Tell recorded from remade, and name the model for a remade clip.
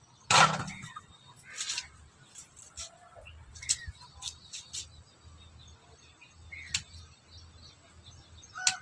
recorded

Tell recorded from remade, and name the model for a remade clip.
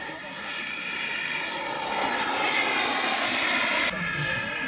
recorded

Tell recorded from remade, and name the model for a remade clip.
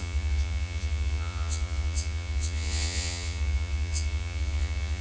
remade, vocoder, Vocos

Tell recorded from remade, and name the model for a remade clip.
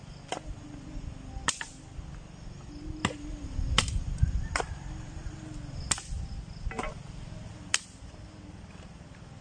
recorded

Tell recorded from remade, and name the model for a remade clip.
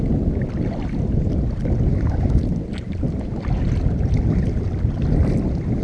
recorded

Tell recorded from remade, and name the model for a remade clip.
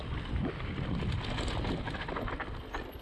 recorded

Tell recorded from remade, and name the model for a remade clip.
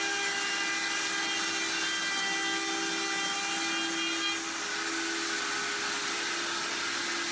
recorded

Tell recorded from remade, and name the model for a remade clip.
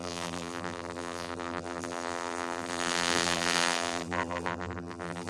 remade, vocoder, BigVGAN v2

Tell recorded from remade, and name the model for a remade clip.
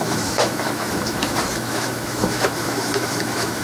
remade, autoencoder, DAC-VAE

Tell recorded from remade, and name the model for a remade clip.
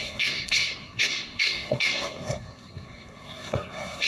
remade, codec, SNAC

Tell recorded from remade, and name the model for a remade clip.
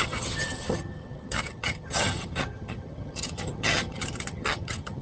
remade, vocoder, HiFi-GAN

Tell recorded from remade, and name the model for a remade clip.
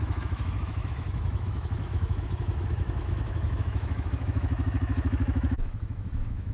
remade, autoencoder, DAC-VAE